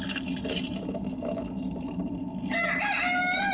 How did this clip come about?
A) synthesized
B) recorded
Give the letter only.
B